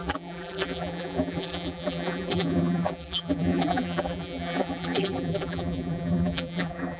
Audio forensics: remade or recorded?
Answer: remade